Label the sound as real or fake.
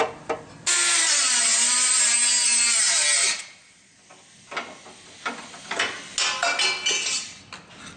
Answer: real